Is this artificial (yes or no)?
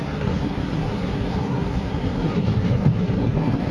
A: yes